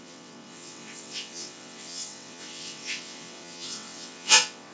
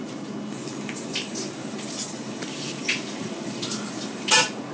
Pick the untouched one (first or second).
second